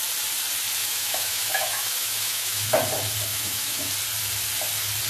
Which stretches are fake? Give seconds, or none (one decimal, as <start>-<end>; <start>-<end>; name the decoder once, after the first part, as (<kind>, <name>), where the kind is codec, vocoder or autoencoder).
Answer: 0.8-2.7 (autoencoder, DAC-VAE); 3.3-3.9